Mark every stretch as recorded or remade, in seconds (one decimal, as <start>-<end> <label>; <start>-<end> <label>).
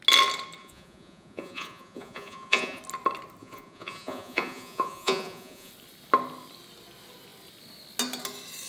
0.0-0.6 recorded; 0.6-2.8 remade; 2.8-3.4 recorded; 3.4-5.7 remade; 5.7-8.7 recorded